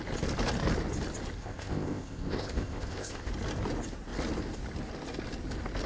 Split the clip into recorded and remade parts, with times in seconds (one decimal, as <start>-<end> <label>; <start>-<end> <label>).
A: 0.0-1.4 recorded; 1.4-3.3 remade; 3.3-5.9 recorded